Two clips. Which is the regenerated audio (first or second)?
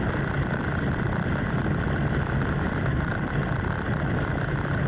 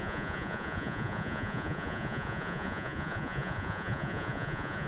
second